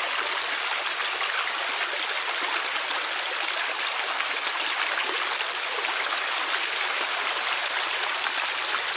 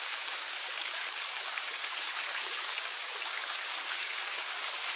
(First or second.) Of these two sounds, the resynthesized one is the second